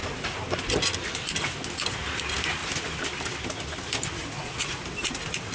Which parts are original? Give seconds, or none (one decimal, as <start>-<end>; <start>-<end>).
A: 0.0-4.2; 4.8-5.5